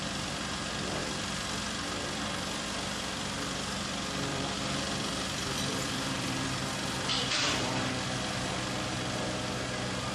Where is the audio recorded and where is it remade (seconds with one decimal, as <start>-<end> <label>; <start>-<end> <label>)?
0.0-4.3 recorded; 4.3-7.7 remade; 7.7-10.1 recorded